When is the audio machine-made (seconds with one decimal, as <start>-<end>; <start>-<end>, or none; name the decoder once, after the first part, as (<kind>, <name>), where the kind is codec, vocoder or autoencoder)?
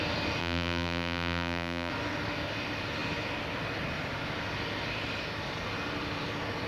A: 0.4-1.9 (vocoder, BigVGAN v2)